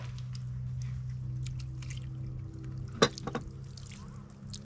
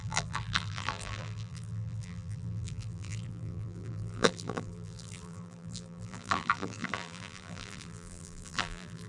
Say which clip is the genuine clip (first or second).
first